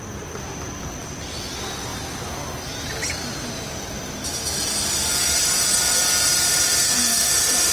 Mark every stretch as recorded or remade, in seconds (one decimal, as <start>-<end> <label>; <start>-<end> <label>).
0.0-6.8 recorded; 6.8-7.3 remade; 7.3-7.7 recorded

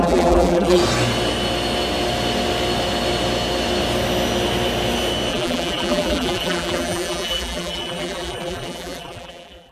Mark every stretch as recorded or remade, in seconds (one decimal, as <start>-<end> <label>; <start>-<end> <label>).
0.0-0.8 remade; 0.8-5.3 recorded; 5.3-9.7 remade

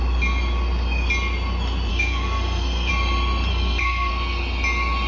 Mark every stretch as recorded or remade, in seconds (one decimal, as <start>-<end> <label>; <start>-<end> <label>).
0.0-1.9 recorded; 1.9-2.9 remade; 2.9-3.5 recorded; 3.5-4.1 remade; 4.1-5.1 recorded

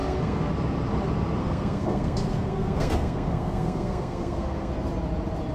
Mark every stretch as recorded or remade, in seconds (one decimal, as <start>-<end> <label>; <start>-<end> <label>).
0.0-0.5 remade; 0.5-1.4 recorded; 1.4-4.7 remade; 4.7-5.5 recorded

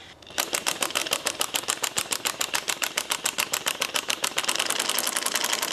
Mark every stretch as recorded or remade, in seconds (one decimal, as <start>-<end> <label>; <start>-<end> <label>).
0.0-1.0 recorded; 1.0-4.4 remade; 4.4-5.7 recorded

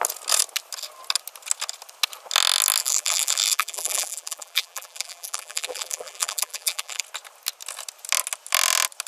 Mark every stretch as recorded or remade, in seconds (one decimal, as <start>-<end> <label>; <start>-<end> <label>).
0.0-2.8 recorded; 2.8-7.0 remade; 7.0-9.1 recorded

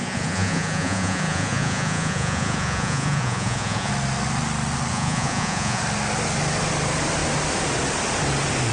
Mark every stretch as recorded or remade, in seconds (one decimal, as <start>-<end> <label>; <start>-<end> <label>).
0.0-3.9 remade; 3.9-4.9 recorded; 4.9-5.8 remade; 5.8-8.7 recorded